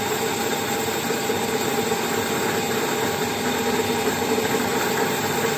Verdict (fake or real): fake